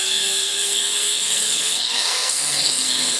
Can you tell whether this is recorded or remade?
remade